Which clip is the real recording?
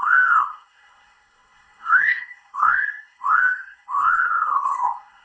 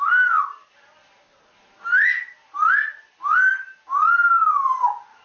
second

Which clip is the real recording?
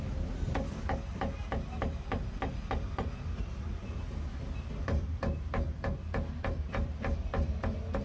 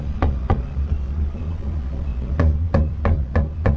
first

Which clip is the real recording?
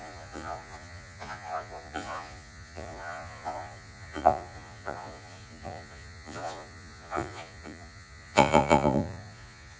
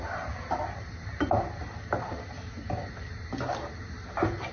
second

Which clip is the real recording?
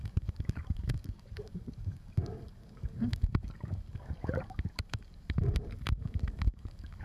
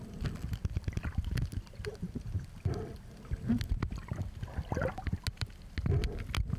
second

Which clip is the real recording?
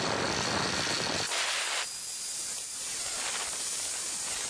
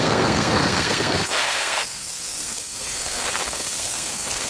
first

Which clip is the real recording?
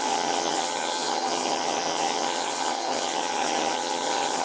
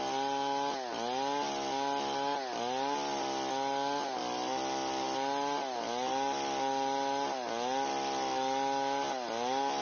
second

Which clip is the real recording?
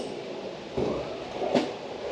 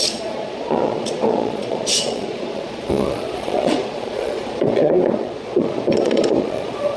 first